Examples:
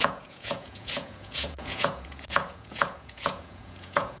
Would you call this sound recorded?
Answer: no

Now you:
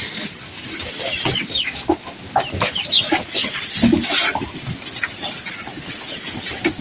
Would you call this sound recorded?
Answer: yes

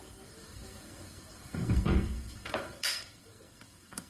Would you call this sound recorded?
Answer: no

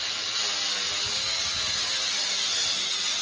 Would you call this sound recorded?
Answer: no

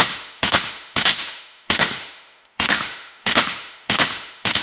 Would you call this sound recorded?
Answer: no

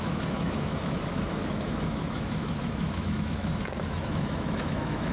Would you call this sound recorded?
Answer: no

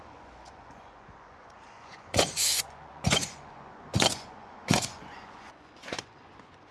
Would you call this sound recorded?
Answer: no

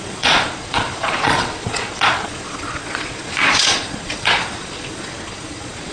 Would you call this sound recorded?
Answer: no